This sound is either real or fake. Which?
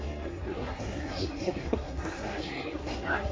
fake